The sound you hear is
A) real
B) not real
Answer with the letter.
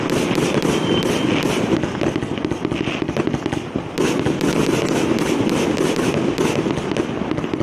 A